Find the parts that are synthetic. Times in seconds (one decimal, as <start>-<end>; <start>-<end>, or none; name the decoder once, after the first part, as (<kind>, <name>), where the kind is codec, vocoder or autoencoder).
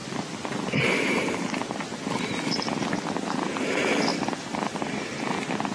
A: 0.0-2.9 (vocoder, BigVGAN v2); 4.1-5.2